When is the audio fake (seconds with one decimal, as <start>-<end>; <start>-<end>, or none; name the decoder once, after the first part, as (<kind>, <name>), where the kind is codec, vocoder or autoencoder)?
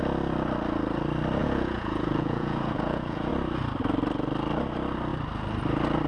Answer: 1.4-3.3 (vocoder, Vocos)